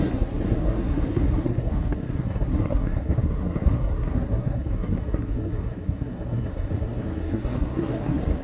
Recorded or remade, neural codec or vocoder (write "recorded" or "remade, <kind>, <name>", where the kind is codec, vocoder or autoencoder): remade, codec, SNAC